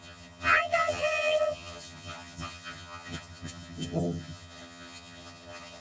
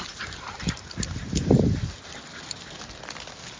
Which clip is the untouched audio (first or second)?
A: second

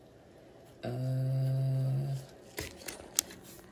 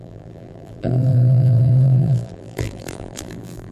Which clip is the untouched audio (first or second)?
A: first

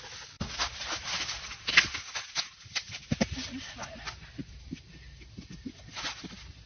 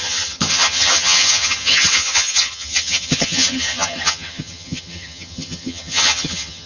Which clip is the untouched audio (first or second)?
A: first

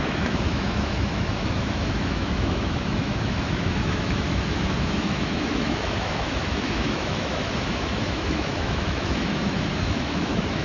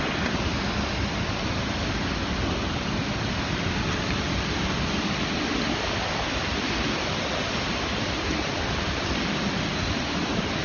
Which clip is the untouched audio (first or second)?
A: second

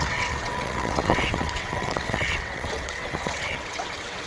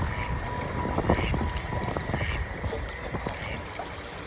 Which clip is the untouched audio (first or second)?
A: second